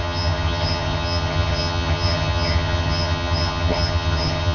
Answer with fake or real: fake